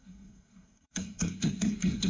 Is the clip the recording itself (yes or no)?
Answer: no